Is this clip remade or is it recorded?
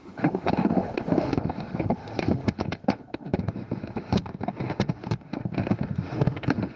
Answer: remade